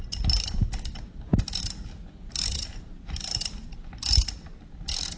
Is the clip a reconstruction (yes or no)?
no